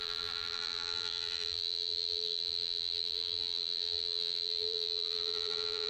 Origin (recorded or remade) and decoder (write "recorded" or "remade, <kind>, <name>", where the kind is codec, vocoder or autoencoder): remade, vocoder, BigVGAN v2